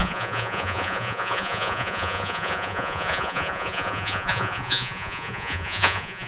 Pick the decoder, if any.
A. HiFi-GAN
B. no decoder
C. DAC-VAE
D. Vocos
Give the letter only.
D